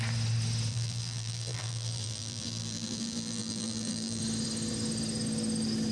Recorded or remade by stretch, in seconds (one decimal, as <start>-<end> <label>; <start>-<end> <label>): 0.0-0.7 recorded; 0.7-4.2 remade; 4.2-5.9 recorded